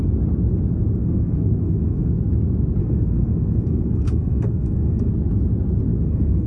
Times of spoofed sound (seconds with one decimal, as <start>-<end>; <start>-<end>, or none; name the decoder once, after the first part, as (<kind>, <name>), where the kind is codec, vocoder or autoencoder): 1.0-2.1 (codec, SNAC); 2.8-5.1; 5.9-6.5

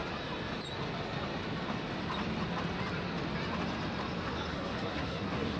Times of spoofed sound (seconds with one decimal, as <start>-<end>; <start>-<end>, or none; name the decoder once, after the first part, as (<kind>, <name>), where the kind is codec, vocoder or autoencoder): 4.5-5.6 (codec, SNAC)

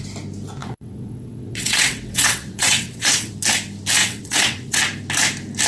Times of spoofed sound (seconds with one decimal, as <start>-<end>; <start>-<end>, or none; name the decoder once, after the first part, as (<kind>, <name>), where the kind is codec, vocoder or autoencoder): 0.6-3.3 (vocoder, WaveNeXt); 4.0-4.8